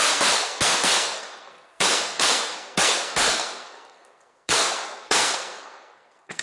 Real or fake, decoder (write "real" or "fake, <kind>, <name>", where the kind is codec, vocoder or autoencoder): fake, codec, SNAC